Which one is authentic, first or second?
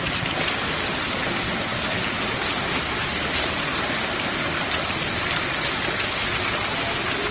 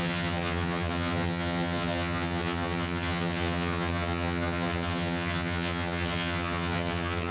first